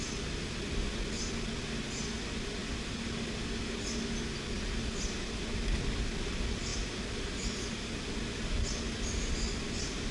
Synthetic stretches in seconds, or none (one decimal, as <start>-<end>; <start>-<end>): none